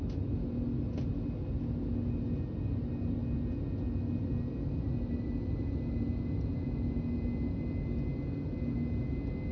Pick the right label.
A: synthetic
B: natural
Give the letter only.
B